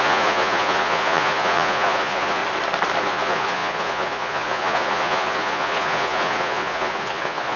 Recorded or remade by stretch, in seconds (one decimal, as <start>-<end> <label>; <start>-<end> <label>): 0.0-2.4 remade; 2.4-3.0 recorded; 3.0-7.6 remade